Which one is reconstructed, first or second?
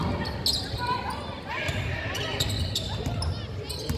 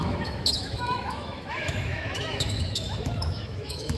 second